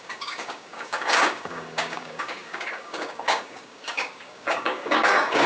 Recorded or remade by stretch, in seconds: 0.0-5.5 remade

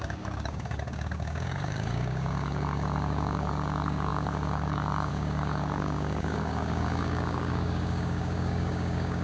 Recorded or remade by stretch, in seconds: 0.0-9.2 remade

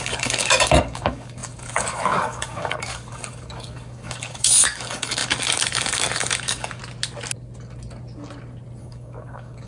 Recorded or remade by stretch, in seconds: 0.0-6.8 remade; 6.8-8.8 recorded; 8.8-9.7 remade

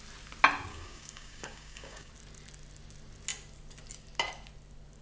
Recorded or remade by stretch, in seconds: 0.0-0.7 recorded; 0.7-2.1 remade; 2.1-5.0 recorded